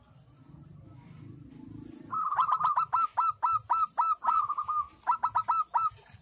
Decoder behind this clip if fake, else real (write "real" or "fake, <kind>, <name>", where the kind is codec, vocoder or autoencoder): real